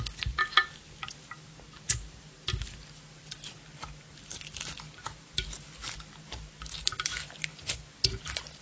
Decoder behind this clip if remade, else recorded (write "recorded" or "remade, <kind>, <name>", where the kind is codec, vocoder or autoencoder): recorded